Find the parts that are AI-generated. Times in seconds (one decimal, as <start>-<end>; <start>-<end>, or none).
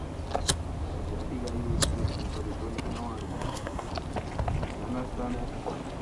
3.2-3.9